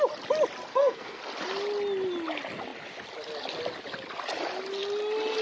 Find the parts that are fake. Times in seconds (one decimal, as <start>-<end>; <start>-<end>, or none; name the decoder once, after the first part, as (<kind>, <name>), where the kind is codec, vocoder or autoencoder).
0.7-1.2 (codec, SNAC)